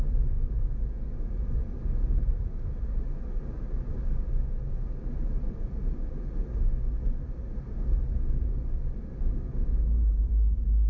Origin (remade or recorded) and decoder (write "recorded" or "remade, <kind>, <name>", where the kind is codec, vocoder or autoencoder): recorded